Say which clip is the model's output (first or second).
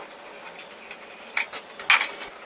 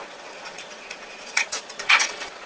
second